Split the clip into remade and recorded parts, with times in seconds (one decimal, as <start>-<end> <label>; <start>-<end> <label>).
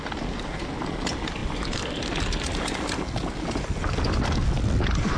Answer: 0.0-5.2 recorded